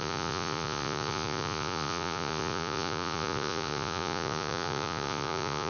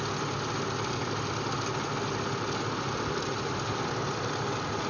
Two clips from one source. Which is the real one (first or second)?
second